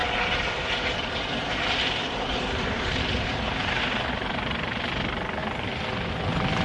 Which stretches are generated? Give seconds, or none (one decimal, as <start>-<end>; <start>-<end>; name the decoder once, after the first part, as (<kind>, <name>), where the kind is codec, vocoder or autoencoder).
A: 0.0-3.8 (vocoder, BigVGAN v2); 4.2-4.9